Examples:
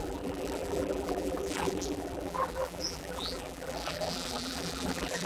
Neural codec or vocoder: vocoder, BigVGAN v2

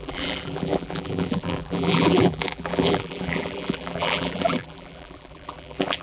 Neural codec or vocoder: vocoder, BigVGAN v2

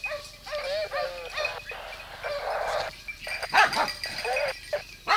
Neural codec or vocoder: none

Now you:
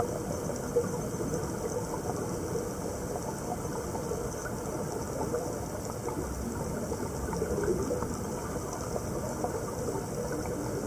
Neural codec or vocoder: none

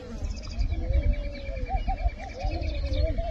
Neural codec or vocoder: none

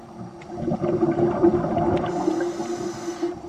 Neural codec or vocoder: none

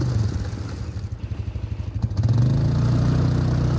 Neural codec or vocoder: none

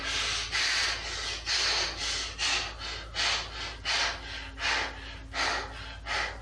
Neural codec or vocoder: none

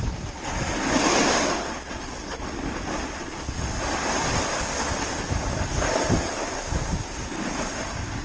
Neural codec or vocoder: none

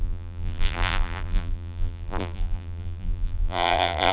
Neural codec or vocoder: vocoder, BigVGAN v2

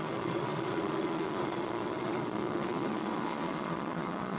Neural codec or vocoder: vocoder, Vocos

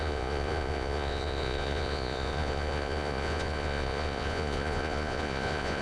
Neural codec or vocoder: vocoder, Vocos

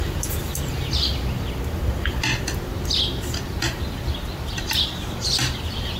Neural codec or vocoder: none